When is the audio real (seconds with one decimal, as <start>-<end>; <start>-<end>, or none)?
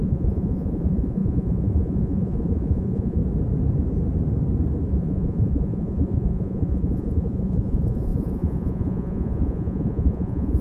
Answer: 3.2-4.9